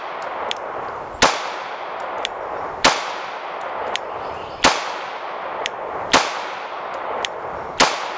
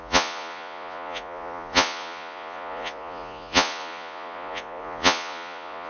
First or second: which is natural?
first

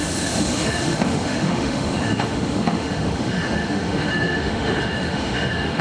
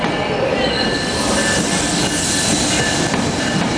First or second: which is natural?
second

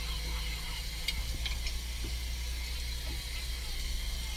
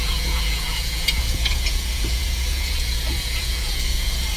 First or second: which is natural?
first